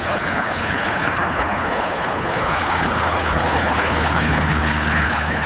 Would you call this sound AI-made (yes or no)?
yes